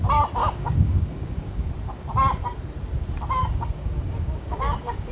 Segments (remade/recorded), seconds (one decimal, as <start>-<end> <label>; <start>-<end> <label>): 0.0-0.4 recorded; 0.4-1.7 remade; 1.7-3.4 recorded; 3.4-5.1 remade